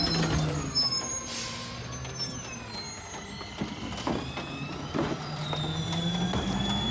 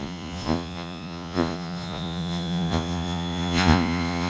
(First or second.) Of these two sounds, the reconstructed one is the second